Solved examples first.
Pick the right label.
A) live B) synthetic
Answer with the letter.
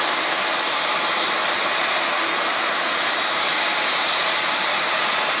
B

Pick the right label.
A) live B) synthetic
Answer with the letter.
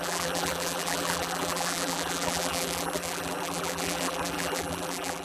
B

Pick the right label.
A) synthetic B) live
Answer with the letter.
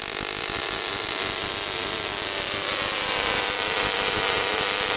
A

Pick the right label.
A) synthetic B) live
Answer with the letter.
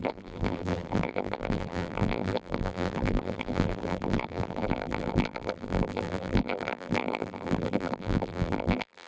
A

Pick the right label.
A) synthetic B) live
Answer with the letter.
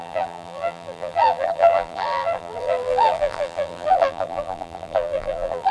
A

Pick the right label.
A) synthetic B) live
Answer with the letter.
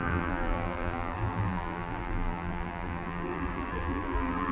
A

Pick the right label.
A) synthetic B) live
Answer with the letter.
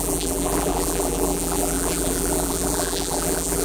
A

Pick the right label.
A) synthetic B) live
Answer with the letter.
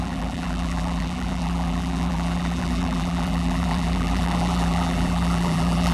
A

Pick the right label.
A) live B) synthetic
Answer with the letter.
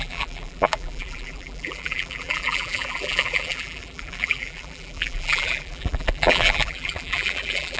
B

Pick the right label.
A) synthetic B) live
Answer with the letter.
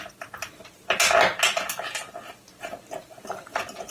B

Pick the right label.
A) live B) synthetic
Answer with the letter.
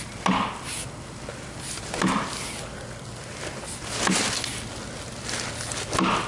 A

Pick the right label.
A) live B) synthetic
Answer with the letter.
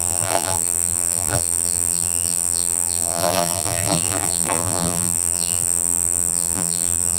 B